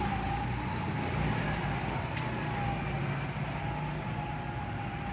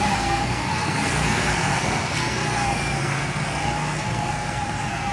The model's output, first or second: second